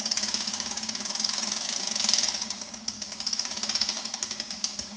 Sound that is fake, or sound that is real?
fake